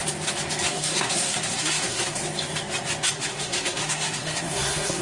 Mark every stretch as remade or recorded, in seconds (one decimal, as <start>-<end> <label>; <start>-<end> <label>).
0.0-0.7 recorded; 0.7-2.2 remade; 2.2-3.1 recorded; 3.1-5.0 remade